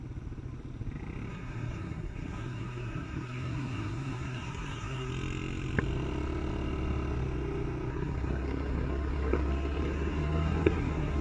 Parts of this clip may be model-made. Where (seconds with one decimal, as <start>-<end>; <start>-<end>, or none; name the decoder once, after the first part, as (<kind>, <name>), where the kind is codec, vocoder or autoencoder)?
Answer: 1.3-5.1 (codec, SNAC); 7.9-11.2